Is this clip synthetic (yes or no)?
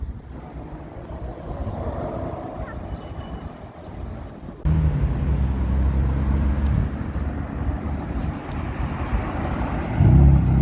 no